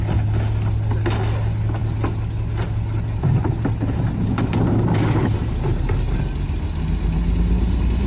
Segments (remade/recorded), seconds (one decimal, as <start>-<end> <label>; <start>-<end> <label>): 0.0-8.1 recorded